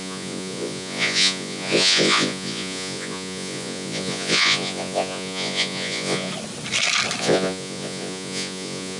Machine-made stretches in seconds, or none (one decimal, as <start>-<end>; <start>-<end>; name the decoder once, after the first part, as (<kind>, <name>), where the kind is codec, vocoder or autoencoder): 0.0-6.3 (vocoder, Vocos); 7.2-9.0